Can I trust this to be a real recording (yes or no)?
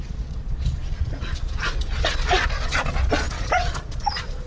no